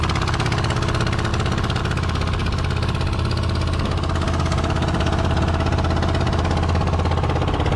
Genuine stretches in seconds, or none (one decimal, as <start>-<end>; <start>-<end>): 0.0-7.8